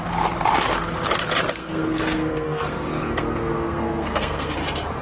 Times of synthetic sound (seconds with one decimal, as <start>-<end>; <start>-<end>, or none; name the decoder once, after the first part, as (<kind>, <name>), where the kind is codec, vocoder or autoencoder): 1.6-4.5 (codec, SNAC)